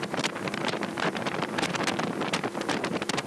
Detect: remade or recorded remade